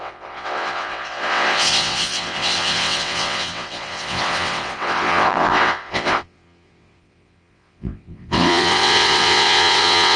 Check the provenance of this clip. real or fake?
fake